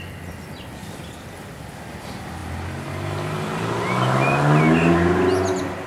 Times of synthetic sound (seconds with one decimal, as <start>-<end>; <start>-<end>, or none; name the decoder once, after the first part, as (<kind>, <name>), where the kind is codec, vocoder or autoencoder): none